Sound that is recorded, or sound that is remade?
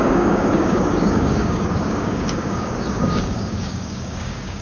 remade